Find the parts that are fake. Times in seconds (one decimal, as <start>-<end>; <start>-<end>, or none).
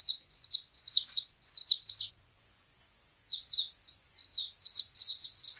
0.0-1.6; 2.1-4.2; 4.8-5.6